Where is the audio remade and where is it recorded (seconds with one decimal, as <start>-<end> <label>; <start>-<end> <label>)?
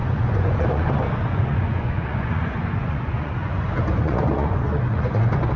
0.0-5.6 remade